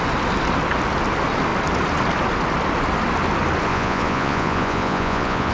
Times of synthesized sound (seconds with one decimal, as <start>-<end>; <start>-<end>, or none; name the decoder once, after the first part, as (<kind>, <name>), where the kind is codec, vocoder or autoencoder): 3.7-5.5 (vocoder, Vocos)